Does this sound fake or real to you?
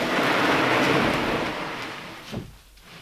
real